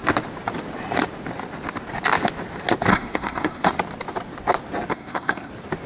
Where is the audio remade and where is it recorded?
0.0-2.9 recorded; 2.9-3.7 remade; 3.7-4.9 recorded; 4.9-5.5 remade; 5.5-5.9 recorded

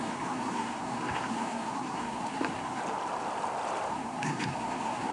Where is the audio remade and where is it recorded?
0.0-2.8 remade; 2.8-3.9 recorded; 3.9-5.1 remade

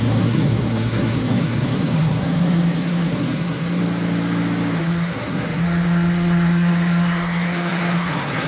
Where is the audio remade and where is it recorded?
0.0-3.8 remade; 3.8-4.8 recorded; 4.8-8.5 remade

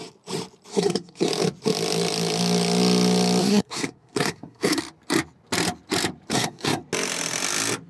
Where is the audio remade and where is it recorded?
0.0-0.7 recorded; 0.7-1.3 remade; 1.3-3.4 recorded; 3.4-4.8 remade; 4.8-6.3 recorded; 6.3-6.8 remade; 6.8-7.9 recorded

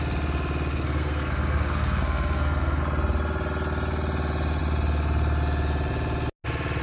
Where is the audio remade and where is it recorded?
0.0-0.7 recorded; 0.7-2.8 remade; 2.8-6.8 recorded

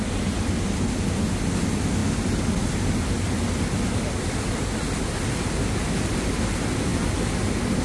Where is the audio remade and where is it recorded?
0.0-7.8 recorded

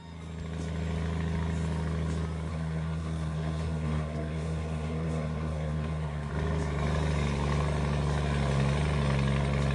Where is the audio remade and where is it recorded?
0.0-2.5 recorded; 2.5-6.3 remade; 6.3-9.7 recorded